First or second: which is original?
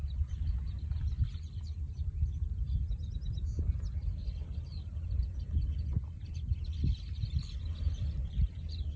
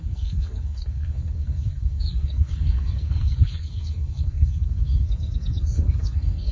first